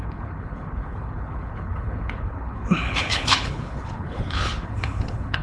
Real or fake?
fake